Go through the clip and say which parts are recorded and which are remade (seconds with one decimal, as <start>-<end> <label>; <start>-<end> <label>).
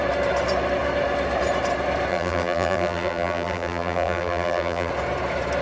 0.0-2.1 recorded; 2.1-4.9 remade; 4.9-5.6 recorded